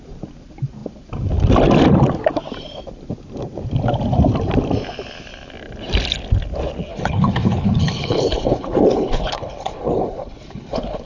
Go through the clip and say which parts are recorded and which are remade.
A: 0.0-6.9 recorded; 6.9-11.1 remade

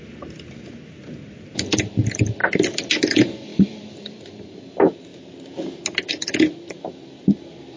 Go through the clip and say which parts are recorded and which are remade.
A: 0.0-2.4 remade; 2.4-3.1 recorded; 3.1-5.1 remade; 5.1-6.1 recorded; 6.1-7.8 remade